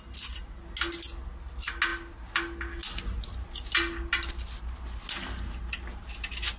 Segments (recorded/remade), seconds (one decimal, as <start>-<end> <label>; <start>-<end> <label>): 0.0-6.6 recorded